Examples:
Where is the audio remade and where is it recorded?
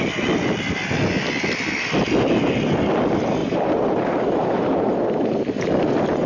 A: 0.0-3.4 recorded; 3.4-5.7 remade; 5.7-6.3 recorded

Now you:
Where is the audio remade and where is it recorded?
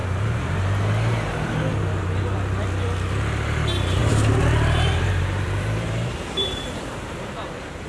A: 0.0-0.8 remade; 0.8-4.0 recorded; 4.0-7.9 remade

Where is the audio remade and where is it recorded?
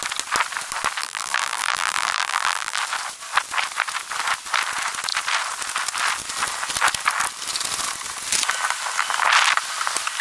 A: 0.0-1.0 recorded; 1.0-2.8 remade; 2.8-10.2 recorded